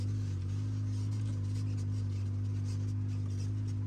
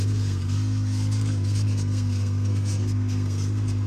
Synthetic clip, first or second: second